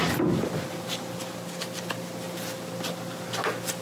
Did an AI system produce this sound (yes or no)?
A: no